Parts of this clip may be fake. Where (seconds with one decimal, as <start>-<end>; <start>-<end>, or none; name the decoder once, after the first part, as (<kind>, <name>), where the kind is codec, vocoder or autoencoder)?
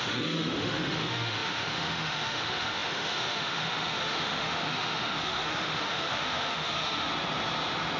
0.0-7.1 (autoencoder, DAC-VAE)